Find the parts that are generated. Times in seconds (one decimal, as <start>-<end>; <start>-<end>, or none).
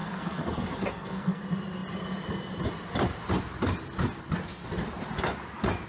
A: 0.0-1.4